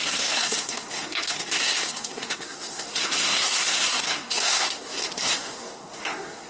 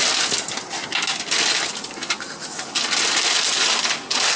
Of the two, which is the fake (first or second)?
first